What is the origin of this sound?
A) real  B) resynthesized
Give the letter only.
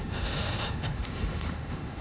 B